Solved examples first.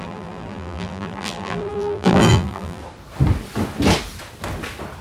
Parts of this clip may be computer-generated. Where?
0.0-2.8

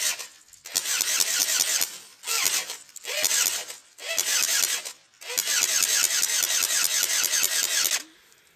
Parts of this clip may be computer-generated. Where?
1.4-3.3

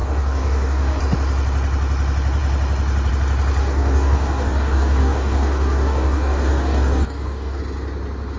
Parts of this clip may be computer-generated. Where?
0.0-1.0; 3.6-7.6

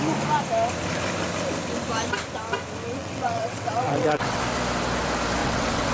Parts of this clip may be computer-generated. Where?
3.0-4.4; 5.4-5.9